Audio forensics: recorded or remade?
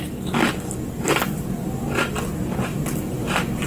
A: recorded